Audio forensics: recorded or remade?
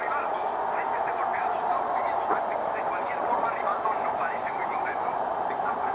remade